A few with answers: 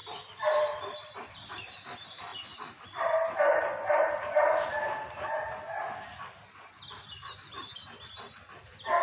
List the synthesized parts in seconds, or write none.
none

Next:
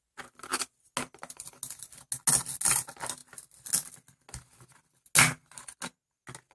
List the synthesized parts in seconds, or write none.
none